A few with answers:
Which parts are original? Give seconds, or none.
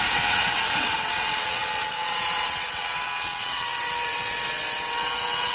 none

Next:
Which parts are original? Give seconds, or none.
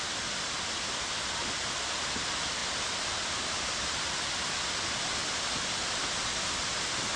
0.0-7.2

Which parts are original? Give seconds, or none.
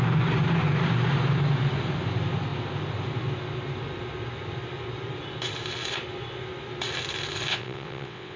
0.0-7.5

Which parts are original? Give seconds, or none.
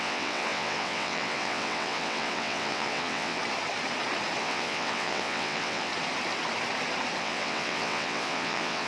3.4-4.4; 5.9-7.2